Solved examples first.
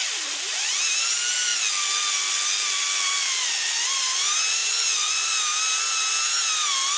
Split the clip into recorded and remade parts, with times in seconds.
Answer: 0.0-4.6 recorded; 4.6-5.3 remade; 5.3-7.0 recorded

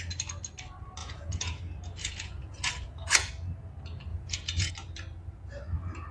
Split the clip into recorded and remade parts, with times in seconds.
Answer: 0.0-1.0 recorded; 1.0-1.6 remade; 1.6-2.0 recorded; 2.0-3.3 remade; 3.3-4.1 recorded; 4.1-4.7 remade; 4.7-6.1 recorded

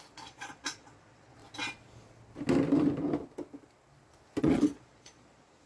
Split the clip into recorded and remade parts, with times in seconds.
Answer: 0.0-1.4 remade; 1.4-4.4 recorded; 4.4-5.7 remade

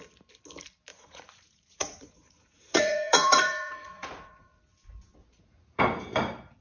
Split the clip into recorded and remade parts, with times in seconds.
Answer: 0.0-0.9 recorded; 0.9-4.6 remade; 4.6-5.2 recorded; 5.2-5.8 remade; 5.8-6.6 recorded

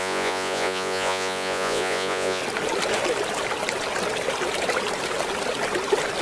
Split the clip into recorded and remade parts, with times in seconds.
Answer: 0.0-2.4 remade; 2.4-6.2 recorded

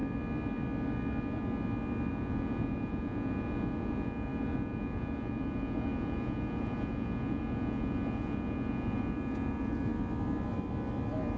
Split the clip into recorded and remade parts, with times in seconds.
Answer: 0.0-2.1 recorded; 2.1-9.9 remade; 9.9-11.4 recorded

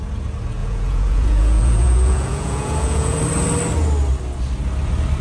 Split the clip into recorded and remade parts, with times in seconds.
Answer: 0.0-0.6 recorded; 0.6-3.2 remade; 3.2-5.2 recorded